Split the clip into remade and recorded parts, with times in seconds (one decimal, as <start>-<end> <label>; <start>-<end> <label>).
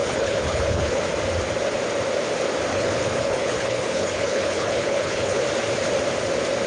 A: 0.0-1.0 remade; 1.0-2.7 recorded; 2.7-5.4 remade; 5.4-6.7 recorded